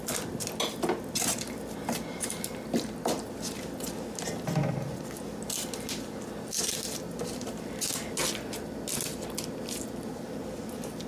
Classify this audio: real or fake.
real